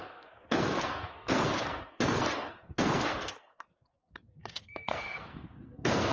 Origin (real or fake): fake